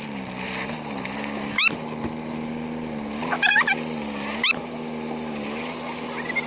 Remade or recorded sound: recorded